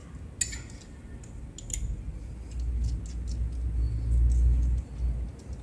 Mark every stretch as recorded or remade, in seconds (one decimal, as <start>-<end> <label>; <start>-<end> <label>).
0.0-5.6 recorded